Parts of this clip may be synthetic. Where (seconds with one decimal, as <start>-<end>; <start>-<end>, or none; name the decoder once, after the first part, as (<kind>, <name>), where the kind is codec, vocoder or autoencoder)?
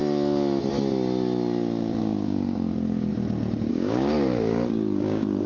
2.0-3.1 (codec, DAC); 3.7-5.5